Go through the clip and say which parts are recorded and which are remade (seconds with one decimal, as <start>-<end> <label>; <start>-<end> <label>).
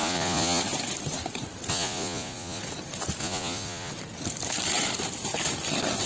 0.0-0.6 remade; 0.6-1.7 recorded; 1.7-2.6 remade; 2.6-3.2 recorded; 3.2-3.9 remade; 3.9-6.1 recorded